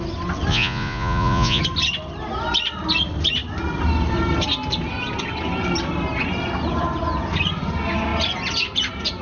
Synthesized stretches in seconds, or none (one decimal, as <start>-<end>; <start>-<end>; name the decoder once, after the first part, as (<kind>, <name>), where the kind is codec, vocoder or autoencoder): 0.5-1.6 (vocoder, Vocos)